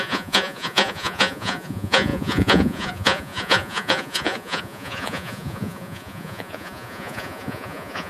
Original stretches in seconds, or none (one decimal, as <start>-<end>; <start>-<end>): none